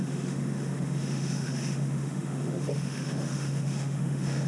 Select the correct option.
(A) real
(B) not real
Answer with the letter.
B